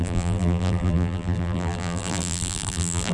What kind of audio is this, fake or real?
fake